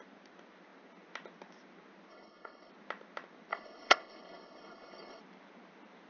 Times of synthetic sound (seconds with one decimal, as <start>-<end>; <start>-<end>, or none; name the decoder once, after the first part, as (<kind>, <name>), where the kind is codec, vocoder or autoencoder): 2.1-2.7 (codec, HILCodec); 3.5-5.2